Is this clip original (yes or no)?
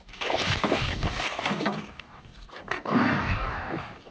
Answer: no